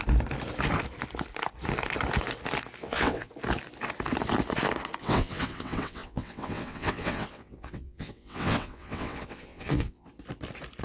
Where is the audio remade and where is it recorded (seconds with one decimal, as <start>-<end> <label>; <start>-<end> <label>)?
0.0-2.8 recorded; 2.8-3.3 remade; 3.3-5.0 recorded; 5.0-10.1 remade; 10.1-10.8 recorded